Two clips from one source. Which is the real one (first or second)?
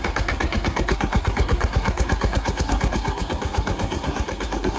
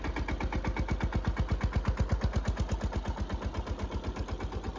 second